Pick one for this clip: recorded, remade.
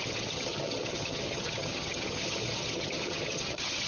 remade